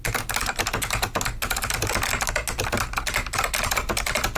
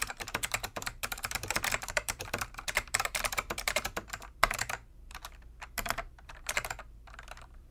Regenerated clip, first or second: second